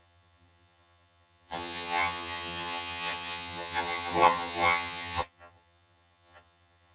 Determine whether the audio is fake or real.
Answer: fake